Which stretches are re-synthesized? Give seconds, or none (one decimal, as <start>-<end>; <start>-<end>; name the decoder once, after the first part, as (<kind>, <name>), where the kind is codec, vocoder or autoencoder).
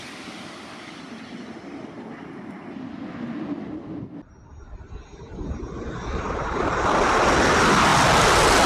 none